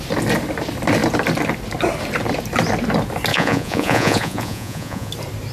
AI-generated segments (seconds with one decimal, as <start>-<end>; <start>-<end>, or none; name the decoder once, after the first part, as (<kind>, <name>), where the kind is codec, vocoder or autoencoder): 3.3-5.1 (vocoder, Vocos)